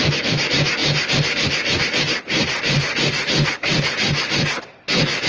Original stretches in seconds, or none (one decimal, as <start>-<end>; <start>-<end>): none